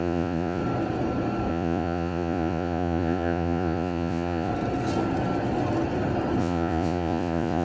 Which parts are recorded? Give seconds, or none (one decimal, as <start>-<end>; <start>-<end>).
0.6-1.5; 4.5-6.4